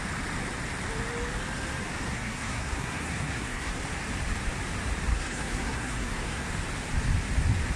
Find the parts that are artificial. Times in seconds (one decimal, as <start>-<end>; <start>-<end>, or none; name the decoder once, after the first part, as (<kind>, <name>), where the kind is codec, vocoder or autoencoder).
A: 2.1-3.8 (codec, SNAC); 5.1-6.5

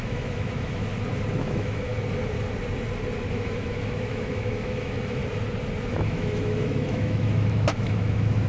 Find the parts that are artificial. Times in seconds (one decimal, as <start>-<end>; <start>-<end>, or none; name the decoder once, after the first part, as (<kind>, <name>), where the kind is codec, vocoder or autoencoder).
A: 0.0-0.9 (autoencoder, DAC-VAE); 1.4-1.9; 3.3-5.2; 5.9-8.5

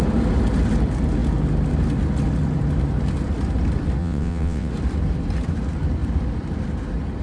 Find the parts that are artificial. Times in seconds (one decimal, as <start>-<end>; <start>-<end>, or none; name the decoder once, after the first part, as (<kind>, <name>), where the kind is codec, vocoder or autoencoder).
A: 4.0-4.7 (vocoder, WaveNeXt)